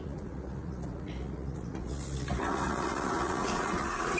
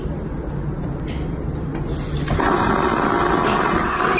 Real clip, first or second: second